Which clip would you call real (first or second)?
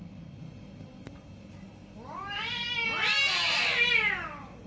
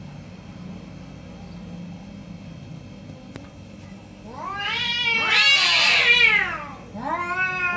second